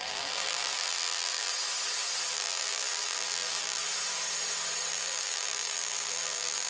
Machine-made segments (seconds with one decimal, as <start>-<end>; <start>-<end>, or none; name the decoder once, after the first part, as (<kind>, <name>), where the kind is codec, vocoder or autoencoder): 0.0-1.5 (vocoder, BigVGAN v2); 2.3-3.8; 4.9-6.7